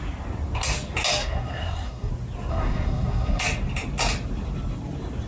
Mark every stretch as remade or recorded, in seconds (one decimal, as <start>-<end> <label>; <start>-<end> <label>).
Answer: 0.0-1.2 recorded; 1.2-2.1 remade; 2.1-2.5 recorded; 2.5-3.4 remade; 3.4-5.3 recorded